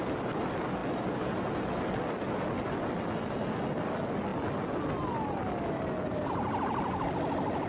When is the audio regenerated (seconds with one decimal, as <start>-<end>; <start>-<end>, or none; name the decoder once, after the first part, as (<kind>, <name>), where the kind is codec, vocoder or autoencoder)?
none